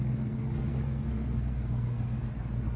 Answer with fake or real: fake